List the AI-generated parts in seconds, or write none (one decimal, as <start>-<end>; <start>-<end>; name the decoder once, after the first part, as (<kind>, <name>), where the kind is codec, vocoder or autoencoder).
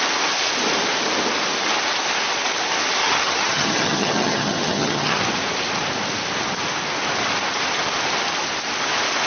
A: 3.0-5.2 (vocoder, HiFi-GAN)